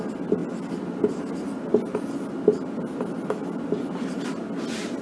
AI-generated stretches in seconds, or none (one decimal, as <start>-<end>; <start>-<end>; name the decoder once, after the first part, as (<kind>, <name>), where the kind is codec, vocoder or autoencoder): none